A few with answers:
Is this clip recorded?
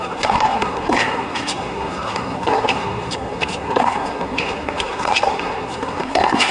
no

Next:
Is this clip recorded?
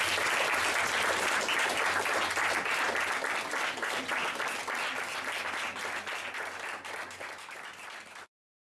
yes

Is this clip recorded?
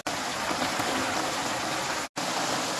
yes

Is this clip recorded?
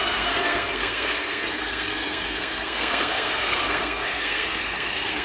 no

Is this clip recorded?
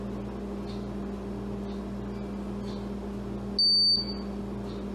yes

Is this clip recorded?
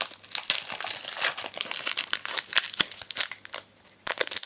yes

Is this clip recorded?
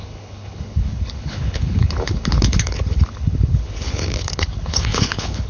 no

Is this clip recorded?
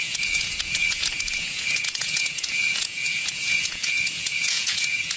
no